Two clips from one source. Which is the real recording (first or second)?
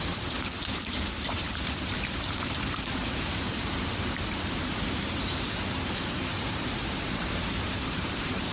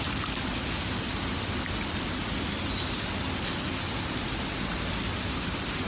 second